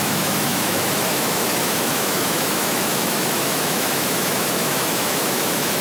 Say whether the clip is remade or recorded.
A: remade